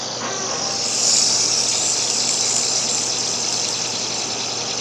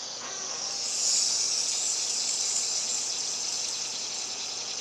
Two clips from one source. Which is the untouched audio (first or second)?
first